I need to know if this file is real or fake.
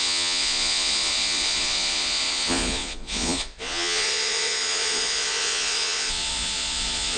fake